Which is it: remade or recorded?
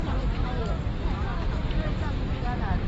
remade